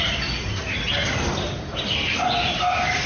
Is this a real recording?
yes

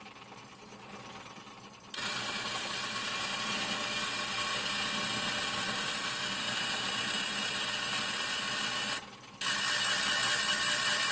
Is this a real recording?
yes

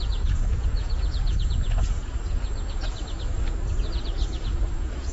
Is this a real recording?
no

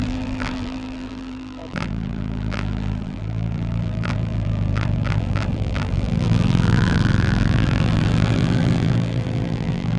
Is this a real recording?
no